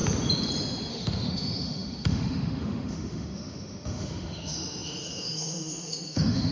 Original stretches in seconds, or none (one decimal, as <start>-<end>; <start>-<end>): 0.0-0.9